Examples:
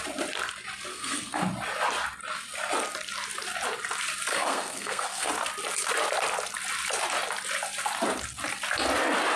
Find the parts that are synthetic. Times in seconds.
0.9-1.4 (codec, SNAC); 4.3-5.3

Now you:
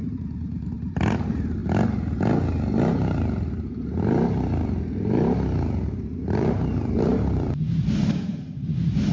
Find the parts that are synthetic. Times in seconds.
0.0-1.6 (vocoder, BigVGAN v2); 6.2-9.1